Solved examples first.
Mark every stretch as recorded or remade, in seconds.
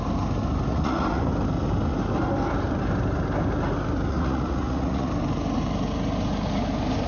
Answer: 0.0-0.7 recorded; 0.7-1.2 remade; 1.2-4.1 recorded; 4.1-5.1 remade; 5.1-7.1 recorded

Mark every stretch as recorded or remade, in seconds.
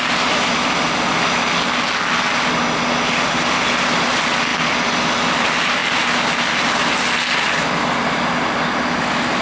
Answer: 0.0-9.4 recorded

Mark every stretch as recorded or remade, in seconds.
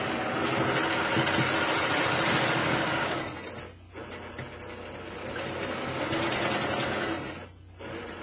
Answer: 0.0-2.6 recorded; 2.6-3.2 remade; 3.2-8.2 recorded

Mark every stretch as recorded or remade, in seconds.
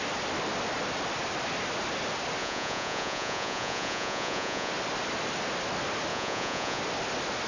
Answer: 0.0-2.4 recorded; 2.4-4.7 remade; 4.7-6.1 recorded; 6.1-6.8 remade; 6.8-7.5 recorded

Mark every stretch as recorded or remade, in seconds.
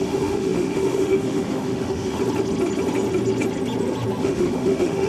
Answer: 0.0-2.2 remade; 2.2-4.2 recorded; 4.2-5.1 remade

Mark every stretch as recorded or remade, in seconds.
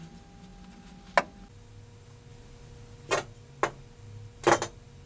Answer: 0.0-5.1 recorded